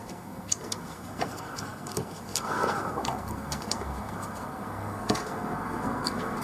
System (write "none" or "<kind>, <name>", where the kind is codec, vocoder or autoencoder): codec, SNAC